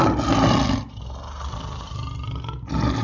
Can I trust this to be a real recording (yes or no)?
yes